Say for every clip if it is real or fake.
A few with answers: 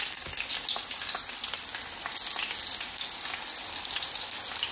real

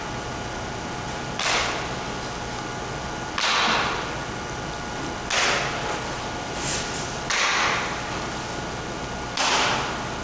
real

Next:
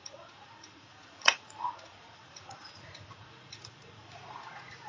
fake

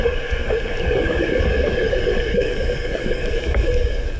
fake